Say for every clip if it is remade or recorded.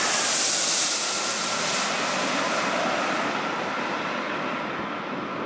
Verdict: recorded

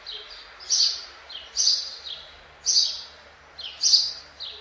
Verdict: recorded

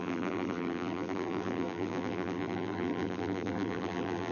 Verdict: remade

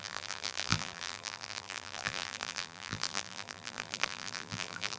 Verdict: remade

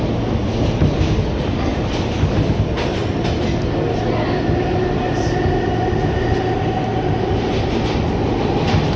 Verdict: recorded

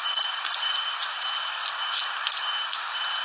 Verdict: recorded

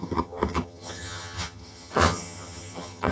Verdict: remade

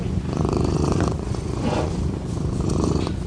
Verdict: remade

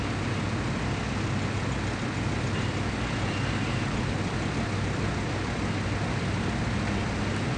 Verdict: recorded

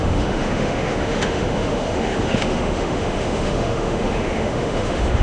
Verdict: remade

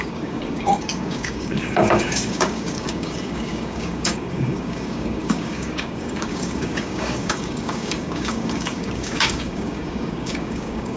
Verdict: remade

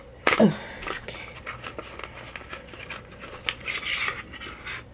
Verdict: recorded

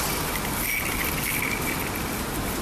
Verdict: recorded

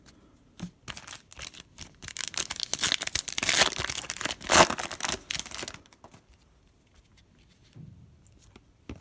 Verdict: recorded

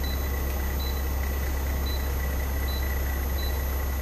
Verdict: recorded